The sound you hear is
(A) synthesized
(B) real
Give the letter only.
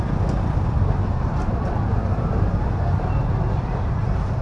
B